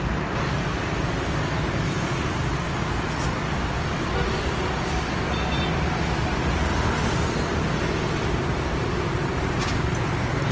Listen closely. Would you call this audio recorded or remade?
recorded